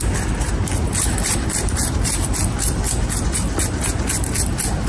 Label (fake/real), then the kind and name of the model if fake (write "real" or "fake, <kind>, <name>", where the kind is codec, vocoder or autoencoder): real